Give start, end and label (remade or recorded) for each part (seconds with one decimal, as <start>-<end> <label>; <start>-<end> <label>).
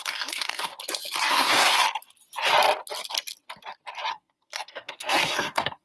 0.0-0.7 remade; 0.7-1.3 recorded; 1.3-1.8 remade; 1.8-4.1 recorded; 4.1-5.8 remade